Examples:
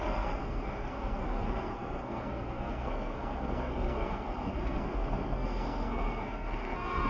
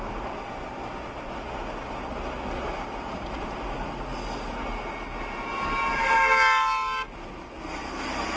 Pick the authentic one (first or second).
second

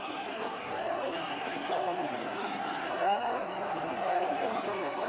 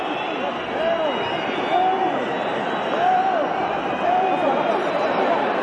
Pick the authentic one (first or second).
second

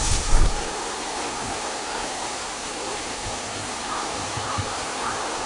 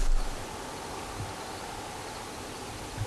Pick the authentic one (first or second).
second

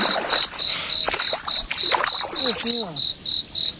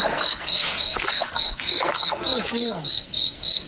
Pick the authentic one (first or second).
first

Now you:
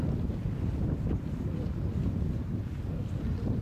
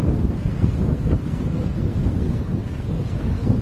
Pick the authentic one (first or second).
first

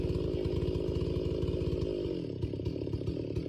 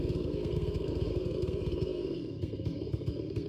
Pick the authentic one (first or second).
first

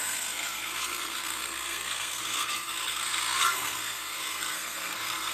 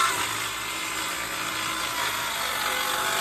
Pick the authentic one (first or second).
second